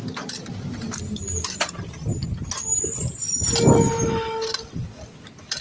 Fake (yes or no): no